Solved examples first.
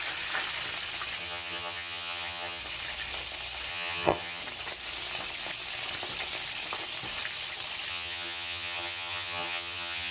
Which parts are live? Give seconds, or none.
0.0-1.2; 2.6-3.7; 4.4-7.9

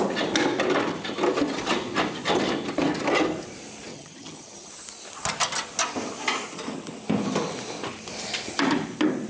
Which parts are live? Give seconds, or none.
0.0-3.9; 4.7-9.3